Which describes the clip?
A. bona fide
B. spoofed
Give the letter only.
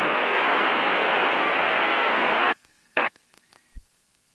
B